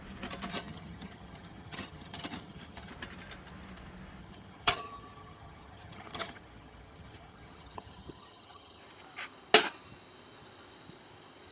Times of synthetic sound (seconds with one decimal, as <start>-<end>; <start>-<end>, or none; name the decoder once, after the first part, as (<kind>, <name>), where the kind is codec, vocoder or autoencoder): 0.5-2.9 (vocoder, HiFi-GAN); 4.2-8.8